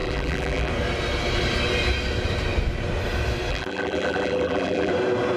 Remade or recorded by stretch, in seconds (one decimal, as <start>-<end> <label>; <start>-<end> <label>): 0.0-0.7 remade; 0.7-3.5 recorded; 3.5-4.9 remade; 4.9-5.4 recorded